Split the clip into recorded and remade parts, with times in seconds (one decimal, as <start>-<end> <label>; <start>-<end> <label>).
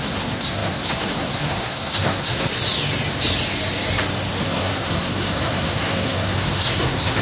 0.0-2.5 remade; 2.5-4.4 recorded; 4.4-7.2 remade